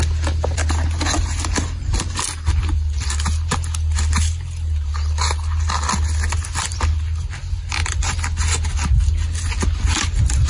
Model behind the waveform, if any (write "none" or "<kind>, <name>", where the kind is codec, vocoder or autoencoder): none